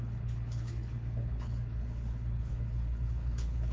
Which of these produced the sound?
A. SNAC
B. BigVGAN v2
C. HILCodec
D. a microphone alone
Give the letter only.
C